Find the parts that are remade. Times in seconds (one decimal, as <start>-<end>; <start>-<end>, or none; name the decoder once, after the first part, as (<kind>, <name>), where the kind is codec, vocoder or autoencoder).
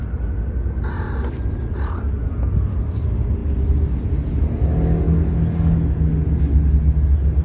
none